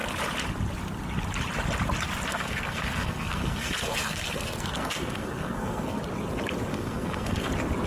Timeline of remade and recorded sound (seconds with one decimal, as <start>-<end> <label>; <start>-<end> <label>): 0.0-2.3 recorded; 2.3-6.0 remade; 6.0-6.7 recorded; 6.7-7.5 remade; 7.5-7.9 recorded